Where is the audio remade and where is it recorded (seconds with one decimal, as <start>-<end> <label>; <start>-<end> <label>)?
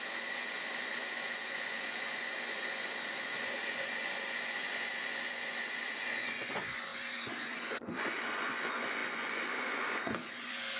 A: 0.0-10.8 remade